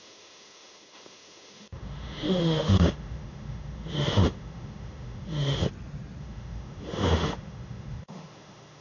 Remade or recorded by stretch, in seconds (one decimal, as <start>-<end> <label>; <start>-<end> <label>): 0.0-5.6 remade; 5.6-6.2 recorded; 6.2-8.8 remade